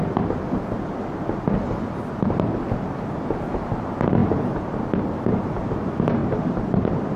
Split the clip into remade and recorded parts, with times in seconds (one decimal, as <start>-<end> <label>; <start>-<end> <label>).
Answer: 0.0-4.2 recorded; 4.2-5.7 remade; 5.7-6.2 recorded; 6.2-7.2 remade